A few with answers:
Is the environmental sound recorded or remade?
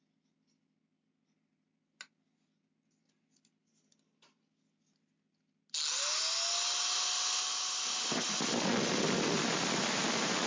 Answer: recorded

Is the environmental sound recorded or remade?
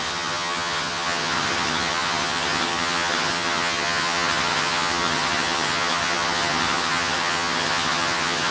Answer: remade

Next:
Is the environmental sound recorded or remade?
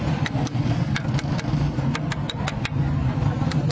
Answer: recorded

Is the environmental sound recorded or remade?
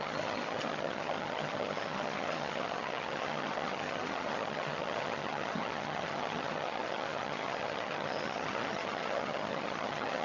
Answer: remade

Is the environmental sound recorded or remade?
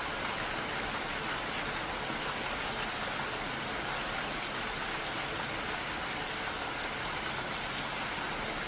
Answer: recorded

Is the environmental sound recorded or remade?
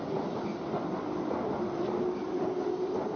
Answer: recorded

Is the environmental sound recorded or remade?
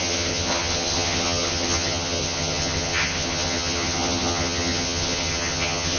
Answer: remade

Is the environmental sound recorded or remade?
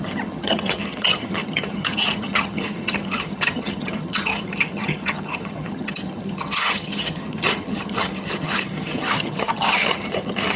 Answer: remade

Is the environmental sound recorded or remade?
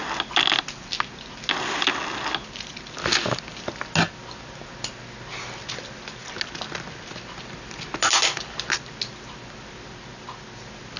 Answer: recorded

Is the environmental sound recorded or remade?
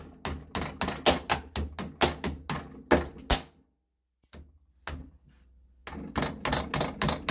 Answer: recorded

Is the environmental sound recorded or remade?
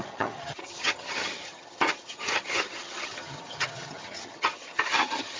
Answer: remade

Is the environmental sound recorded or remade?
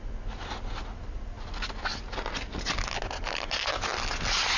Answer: recorded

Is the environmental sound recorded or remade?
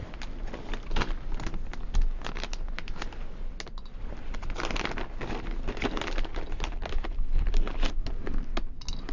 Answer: recorded